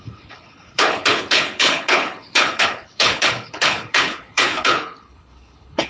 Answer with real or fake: fake